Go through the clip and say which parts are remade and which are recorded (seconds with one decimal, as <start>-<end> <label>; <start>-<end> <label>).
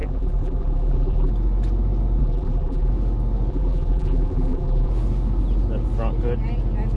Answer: 0.0-1.3 remade; 1.3-2.2 recorded; 2.2-2.9 remade; 2.9-3.5 recorded; 3.5-4.9 remade; 4.9-7.0 recorded